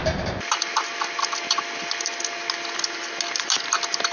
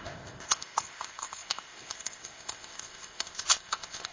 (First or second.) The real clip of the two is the first